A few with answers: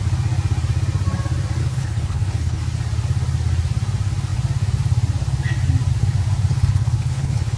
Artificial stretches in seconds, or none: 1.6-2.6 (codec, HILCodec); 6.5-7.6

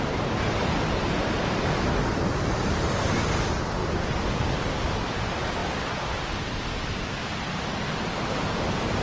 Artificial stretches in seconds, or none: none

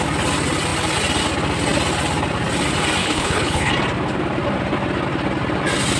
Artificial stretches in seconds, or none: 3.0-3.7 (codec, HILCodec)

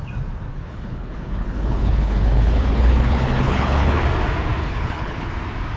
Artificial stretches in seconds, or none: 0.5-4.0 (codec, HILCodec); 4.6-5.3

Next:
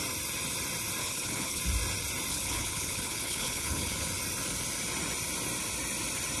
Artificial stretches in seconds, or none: 1.0-1.6 (codec, HILCodec); 2.3-4.1

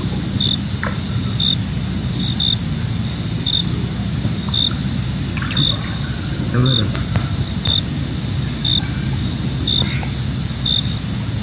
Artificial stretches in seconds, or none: none

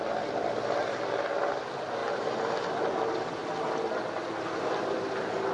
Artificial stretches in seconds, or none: none

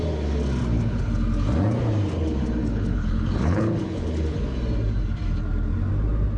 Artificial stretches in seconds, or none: 0.6-1.1 (codec, HILCodec); 2.6-4.4